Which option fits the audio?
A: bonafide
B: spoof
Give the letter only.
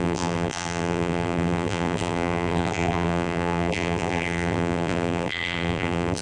B